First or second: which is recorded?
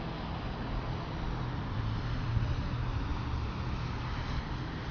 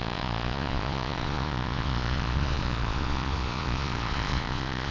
first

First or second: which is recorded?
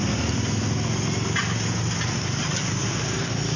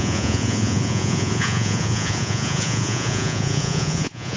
first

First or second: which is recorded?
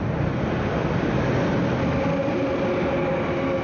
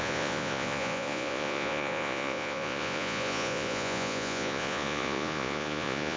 first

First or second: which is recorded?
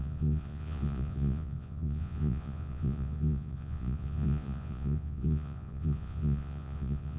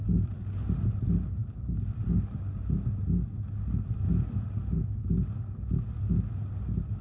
second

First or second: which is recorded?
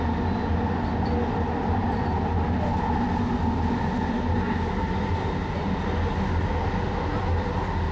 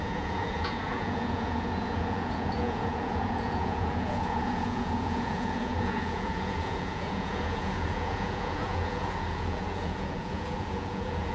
first